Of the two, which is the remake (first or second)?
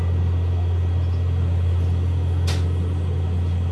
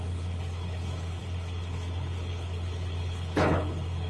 second